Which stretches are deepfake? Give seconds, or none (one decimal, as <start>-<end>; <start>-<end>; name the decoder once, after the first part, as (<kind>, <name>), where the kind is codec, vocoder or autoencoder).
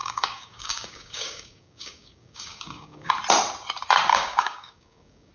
0.0-3.1 (codec, DAC); 4.1-5.3